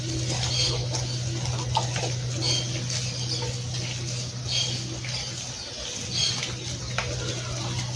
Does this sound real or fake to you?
real